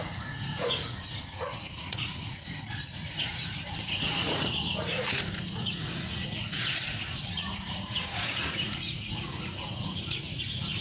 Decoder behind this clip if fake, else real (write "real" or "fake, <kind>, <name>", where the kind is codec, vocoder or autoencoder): fake, vocoder, Vocos